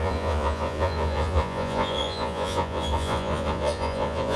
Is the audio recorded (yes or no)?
no